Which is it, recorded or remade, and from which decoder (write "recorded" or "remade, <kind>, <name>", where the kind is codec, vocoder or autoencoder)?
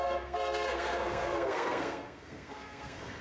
remade, codec, SNAC